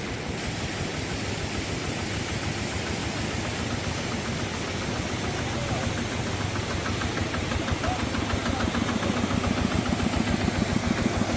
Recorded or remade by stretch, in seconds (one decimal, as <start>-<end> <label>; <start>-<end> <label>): 0.0-3.0 recorded; 3.0-3.7 remade; 3.7-5.6 recorded; 5.6-6.3 remade; 6.3-11.4 recorded

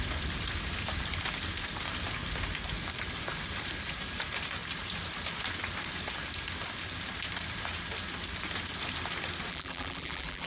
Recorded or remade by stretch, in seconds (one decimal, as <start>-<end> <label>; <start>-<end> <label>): 0.0-9.5 recorded; 9.5-10.5 remade

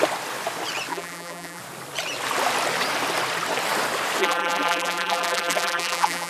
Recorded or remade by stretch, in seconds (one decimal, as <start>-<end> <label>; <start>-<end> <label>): 0.0-0.9 recorded; 0.9-1.6 remade; 1.6-4.2 recorded; 4.2-6.3 remade

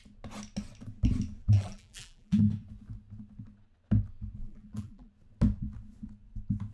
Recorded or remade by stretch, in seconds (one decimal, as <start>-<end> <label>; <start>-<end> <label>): 0.0-1.4 recorded; 1.4-2.4 remade; 2.4-4.4 recorded; 4.4-5.1 remade; 5.1-6.7 recorded

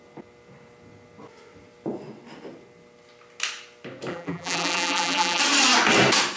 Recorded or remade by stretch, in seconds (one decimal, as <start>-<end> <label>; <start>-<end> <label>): 0.0-4.1 recorded; 4.1-5.4 remade; 5.4-6.4 recorded

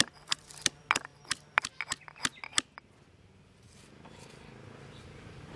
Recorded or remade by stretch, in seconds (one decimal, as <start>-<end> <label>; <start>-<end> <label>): 0.0-5.6 remade

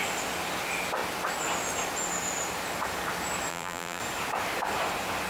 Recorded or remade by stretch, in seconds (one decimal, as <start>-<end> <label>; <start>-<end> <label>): 0.0-3.5 recorded; 3.5-4.0 remade; 4.0-5.3 recorded

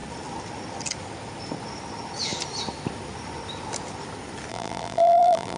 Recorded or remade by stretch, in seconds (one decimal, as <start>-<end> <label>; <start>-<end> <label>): 0.0-4.5 recorded; 4.5-5.6 remade